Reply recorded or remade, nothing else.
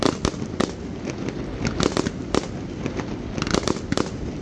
recorded